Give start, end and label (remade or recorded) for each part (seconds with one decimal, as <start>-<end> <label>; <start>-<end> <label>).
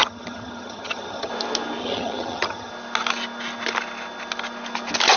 0.0-1.3 remade; 1.3-1.8 recorded; 1.8-2.7 remade; 2.7-5.2 recorded